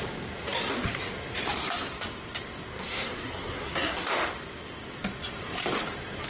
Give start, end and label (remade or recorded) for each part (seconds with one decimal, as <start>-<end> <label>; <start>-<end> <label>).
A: 0.0-2.7 recorded; 2.7-4.1 remade; 4.1-6.3 recorded